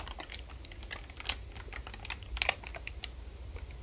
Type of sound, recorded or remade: recorded